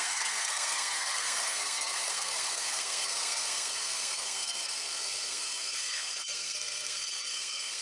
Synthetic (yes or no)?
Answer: yes